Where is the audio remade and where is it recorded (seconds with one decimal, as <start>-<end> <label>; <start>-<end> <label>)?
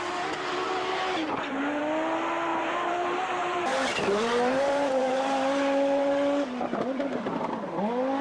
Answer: 0.0-2.5 recorded; 2.5-7.3 remade; 7.3-8.2 recorded